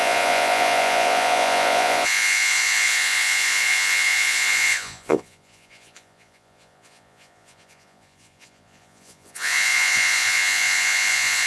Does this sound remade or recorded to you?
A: remade